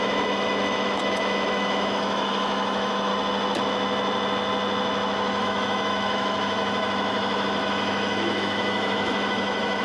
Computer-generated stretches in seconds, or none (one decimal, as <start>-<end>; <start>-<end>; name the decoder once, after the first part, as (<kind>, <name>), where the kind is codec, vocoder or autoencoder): 0.0-3.1 (autoencoder, DAC-VAE); 5.4-9.8